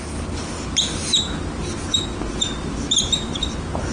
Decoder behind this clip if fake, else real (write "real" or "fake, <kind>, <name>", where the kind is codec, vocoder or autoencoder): real